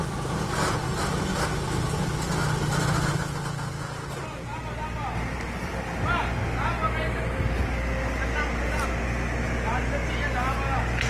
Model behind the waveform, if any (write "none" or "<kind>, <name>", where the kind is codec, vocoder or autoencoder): none